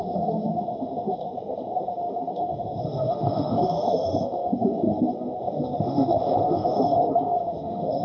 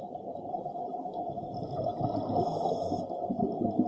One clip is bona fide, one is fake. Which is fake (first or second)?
first